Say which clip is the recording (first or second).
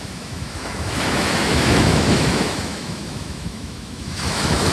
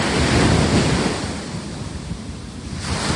second